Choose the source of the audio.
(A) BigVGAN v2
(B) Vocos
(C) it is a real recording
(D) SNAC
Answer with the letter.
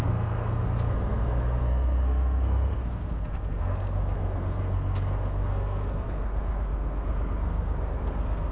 D